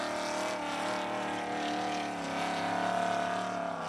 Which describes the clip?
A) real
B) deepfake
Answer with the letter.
A